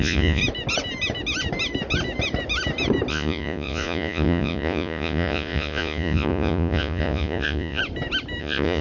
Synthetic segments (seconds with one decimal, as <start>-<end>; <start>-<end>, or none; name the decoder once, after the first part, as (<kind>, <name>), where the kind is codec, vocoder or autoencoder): 0.0-0.4 (vocoder, Vocos); 3.1-7.8; 8.4-8.8